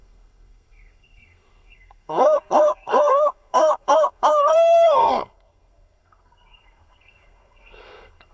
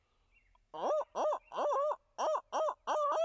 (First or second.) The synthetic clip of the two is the first